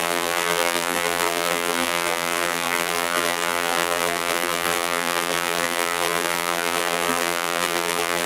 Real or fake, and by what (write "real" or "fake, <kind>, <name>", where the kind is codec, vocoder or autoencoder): fake, vocoder, BigVGAN v2